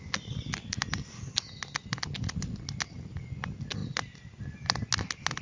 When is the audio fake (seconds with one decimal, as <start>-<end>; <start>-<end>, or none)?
none